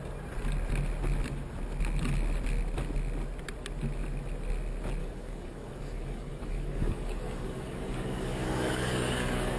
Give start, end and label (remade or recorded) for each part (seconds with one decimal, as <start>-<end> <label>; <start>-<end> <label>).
0.0-5.0 recorded; 5.0-9.6 remade